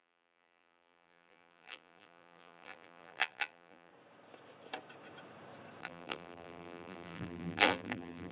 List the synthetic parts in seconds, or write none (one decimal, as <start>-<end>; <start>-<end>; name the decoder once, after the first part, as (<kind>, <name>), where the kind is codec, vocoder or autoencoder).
0.0-3.9 (vocoder, BigVGAN v2); 5.8-8.3